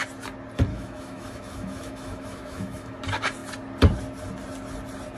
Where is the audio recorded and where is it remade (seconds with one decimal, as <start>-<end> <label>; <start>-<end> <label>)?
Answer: 0.0-0.7 recorded; 0.7-3.0 remade; 3.0-5.2 recorded